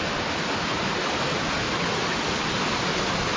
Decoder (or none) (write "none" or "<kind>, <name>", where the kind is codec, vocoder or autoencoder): none